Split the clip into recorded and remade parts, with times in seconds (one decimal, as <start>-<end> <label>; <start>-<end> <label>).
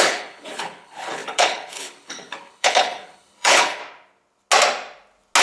0.0-3.8 remade; 3.8-5.4 recorded